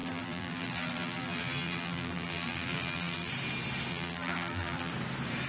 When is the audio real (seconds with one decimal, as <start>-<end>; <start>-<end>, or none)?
3.3-3.9; 4.9-5.5